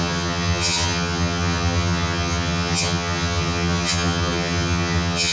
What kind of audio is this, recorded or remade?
remade